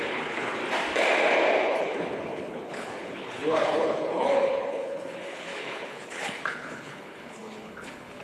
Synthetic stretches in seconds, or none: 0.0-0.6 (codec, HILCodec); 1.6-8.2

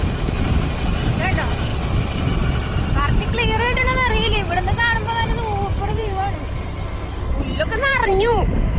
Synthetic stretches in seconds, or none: 0.0-1.7 (vocoder, BigVGAN v2); 5.9-6.8; 7.9-8.8

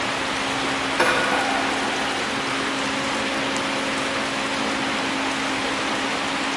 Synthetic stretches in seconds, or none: none